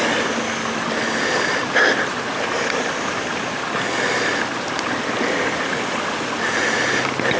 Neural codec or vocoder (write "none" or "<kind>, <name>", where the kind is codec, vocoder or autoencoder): none